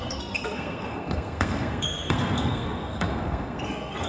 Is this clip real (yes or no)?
no